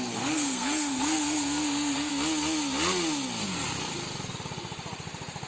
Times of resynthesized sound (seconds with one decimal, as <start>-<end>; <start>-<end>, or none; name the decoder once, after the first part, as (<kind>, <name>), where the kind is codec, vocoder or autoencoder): 0.0-2.1 (codec, SNAC)